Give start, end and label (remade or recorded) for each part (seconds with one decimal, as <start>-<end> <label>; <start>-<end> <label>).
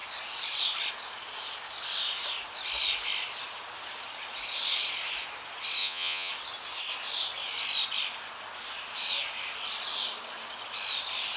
0.0-5.8 recorded; 5.8-6.3 remade; 6.3-11.4 recorded